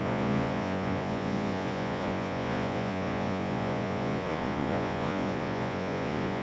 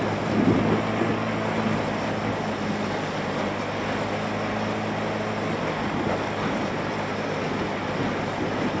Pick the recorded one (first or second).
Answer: second